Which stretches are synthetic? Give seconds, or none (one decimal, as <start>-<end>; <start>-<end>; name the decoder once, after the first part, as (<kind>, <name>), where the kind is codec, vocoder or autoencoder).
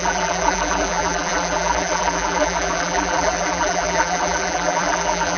0.0-5.4 (vocoder, BigVGAN v2)